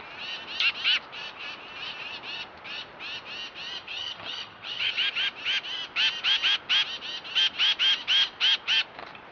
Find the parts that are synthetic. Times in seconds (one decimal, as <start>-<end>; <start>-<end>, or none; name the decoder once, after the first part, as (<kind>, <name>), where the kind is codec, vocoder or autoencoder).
3.8-4.9 (vocoder, HiFi-GAN)

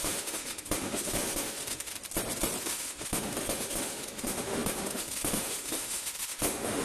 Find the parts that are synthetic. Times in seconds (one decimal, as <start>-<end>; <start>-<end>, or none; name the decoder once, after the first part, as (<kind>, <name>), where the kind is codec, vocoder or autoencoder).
0.0-1.9 (autoencoder, DAC-VAE); 2.6-6.8

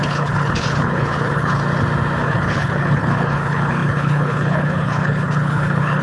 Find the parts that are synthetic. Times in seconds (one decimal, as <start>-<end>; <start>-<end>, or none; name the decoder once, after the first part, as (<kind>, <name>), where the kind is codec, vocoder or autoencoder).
0.0-1.6 (codec, HILCodec); 2.2-6.0

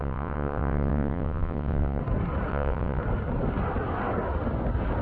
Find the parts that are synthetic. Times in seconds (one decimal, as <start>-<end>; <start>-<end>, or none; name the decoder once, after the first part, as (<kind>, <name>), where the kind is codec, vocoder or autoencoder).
0.0-2.0 (vocoder, WaveNeXt); 2.5-3.0

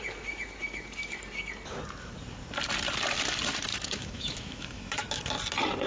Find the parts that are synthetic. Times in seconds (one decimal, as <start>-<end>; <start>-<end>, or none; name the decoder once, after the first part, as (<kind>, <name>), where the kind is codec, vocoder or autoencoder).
3.7-5.3 (autoencoder, DAC-VAE)

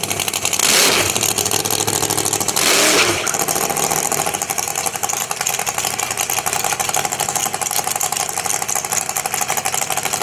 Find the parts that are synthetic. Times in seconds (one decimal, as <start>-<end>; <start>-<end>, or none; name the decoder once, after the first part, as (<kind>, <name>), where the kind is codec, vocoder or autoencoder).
none

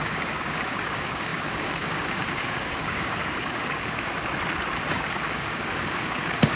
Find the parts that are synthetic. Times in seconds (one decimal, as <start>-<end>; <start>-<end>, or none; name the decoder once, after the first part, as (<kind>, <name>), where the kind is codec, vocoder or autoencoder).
0.0-4.1 (codec, DAC); 4.9-6.6

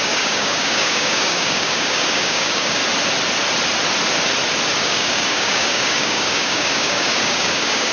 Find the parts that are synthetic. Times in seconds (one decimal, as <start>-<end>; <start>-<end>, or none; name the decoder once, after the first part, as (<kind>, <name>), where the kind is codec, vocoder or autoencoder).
0.0-2.8 (codec, DAC); 4.8-7.9